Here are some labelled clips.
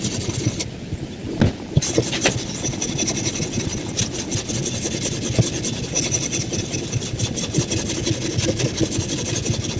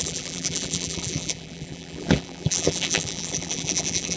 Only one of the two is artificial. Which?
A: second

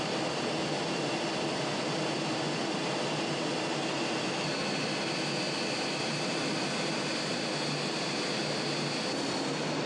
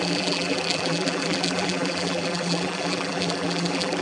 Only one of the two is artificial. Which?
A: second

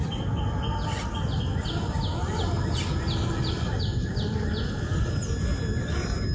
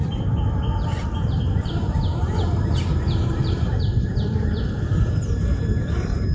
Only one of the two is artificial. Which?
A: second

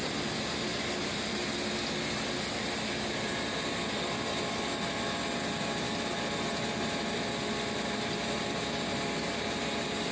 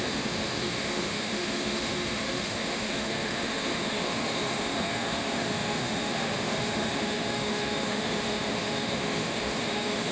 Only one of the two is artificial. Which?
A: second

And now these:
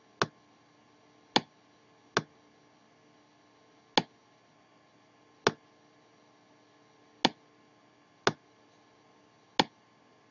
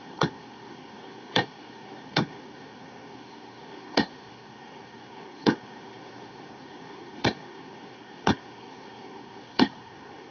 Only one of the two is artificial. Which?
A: second